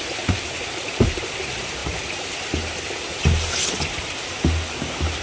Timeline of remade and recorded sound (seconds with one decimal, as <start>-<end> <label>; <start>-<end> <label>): 0.0-5.2 recorded